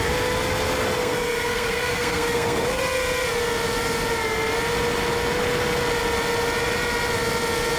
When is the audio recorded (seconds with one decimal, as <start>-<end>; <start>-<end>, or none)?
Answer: 0.0-1.0; 2.8-7.8